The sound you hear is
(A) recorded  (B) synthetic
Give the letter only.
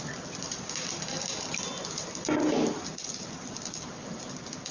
A